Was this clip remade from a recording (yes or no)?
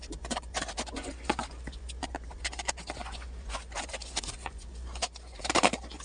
yes